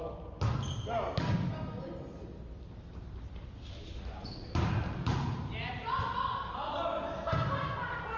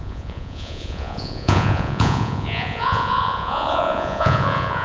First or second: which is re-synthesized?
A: second